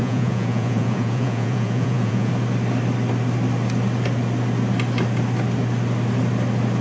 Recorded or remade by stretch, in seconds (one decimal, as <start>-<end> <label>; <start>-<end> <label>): 0.0-2.3 remade; 2.3-6.8 recorded